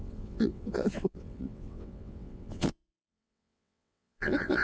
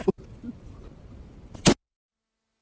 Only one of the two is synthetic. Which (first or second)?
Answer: first